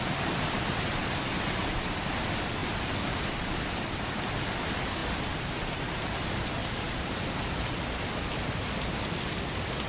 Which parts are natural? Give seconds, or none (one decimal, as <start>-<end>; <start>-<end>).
0.0-6.6; 7.6-9.9